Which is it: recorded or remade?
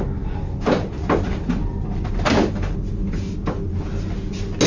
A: recorded